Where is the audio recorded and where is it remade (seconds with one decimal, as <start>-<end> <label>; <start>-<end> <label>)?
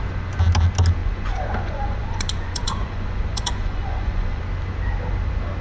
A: 0.0-1.0 recorded; 1.0-4.4 remade; 4.4-5.6 recorded